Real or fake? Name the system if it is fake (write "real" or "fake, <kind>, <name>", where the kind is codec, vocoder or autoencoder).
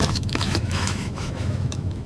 fake, autoencoder, DAC-VAE